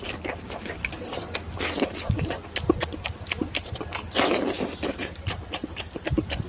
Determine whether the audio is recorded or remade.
recorded